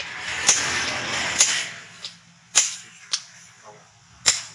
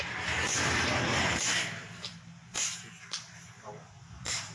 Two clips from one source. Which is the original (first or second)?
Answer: first